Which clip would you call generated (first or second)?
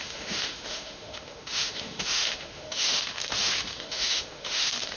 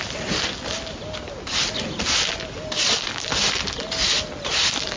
first